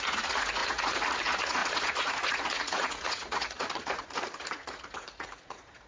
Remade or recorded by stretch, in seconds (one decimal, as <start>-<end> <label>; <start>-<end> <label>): 0.0-5.9 remade